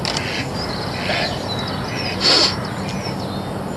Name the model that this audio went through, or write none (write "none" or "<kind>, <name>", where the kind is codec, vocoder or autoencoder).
none